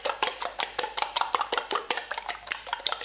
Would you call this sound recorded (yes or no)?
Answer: no